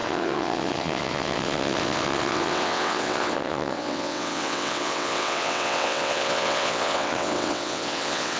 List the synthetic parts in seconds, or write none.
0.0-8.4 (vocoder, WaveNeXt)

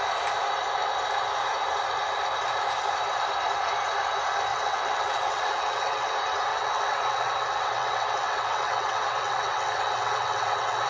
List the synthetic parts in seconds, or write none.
4.5-6.1 (vocoder, WaveNeXt); 6.5-10.9

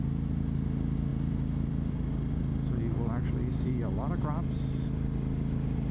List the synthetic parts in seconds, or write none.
none

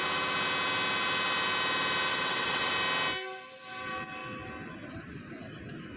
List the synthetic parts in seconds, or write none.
2.1-2.7 (vocoder, WaveNeXt)

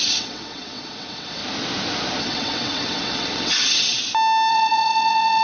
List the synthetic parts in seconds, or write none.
0.0-1.4 (vocoder, WaveNeXt); 2.2-4.0; 4.5-5.4

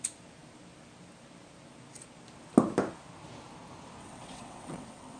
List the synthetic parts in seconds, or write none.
4.0-5.2 (vocoder, WaveNeXt)

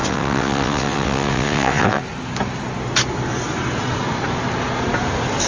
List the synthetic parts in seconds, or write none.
0.0-2.0 (vocoder, WaveNeXt)

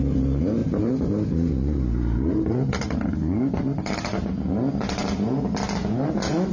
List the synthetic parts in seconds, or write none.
none